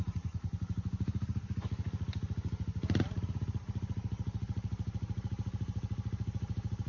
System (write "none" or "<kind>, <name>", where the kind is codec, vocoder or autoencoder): none